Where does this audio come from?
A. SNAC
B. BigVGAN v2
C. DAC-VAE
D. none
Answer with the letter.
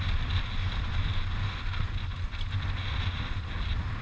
D